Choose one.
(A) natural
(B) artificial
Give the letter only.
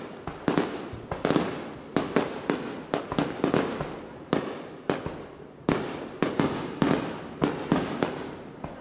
A